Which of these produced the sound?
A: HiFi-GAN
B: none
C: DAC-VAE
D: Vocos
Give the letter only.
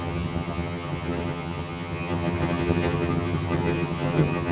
A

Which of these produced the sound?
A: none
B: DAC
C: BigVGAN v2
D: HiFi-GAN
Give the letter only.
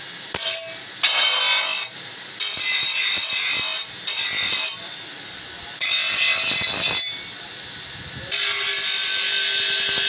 A